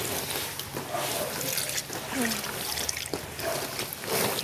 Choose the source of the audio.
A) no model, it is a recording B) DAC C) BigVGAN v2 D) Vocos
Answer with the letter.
A